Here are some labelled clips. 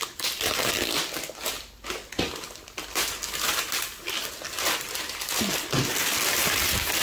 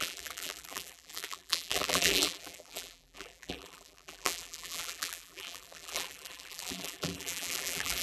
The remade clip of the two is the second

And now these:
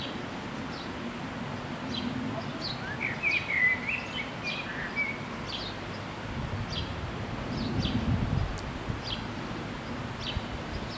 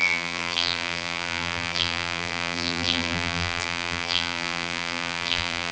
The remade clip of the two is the second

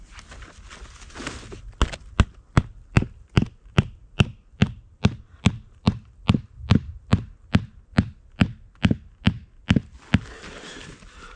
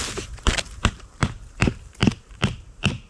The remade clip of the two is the second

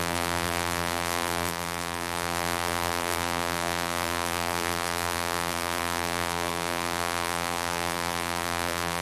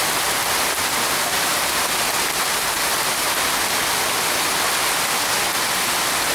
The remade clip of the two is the first